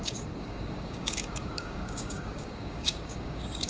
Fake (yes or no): yes